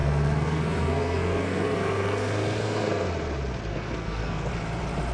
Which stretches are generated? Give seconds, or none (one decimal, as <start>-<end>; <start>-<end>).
0.0-3.1; 3.7-4.5